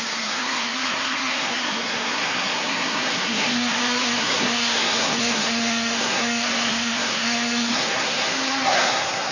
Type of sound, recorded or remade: remade